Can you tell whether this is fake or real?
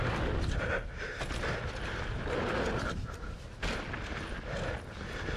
real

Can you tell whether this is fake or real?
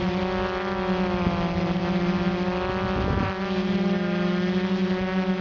real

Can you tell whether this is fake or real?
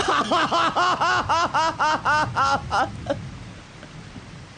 real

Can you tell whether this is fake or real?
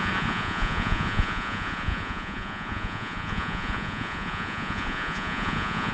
fake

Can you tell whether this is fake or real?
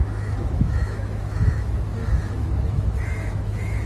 fake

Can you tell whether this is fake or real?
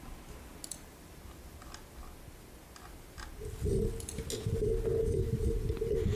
real